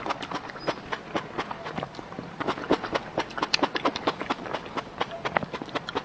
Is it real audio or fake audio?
real